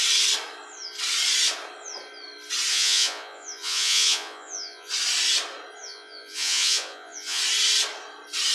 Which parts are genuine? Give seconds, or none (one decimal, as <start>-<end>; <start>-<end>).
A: 0.0-2.7; 4.9-5.8; 7.4-8.5